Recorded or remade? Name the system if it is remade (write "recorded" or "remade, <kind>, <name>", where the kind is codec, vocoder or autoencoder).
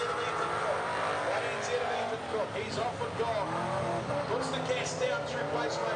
recorded